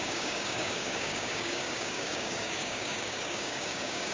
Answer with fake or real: fake